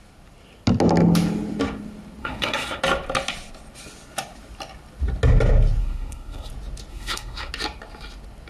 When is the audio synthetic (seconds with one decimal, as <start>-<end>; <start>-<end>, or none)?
2.2-2.8; 5.8-6.5; 6.9-7.5